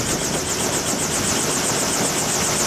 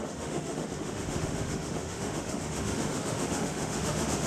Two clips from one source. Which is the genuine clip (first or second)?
first